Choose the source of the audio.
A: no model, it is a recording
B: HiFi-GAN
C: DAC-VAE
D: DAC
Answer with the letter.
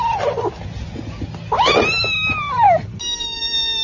A